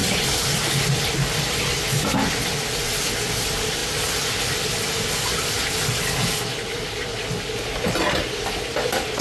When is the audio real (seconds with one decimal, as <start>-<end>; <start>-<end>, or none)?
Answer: 1.0-9.2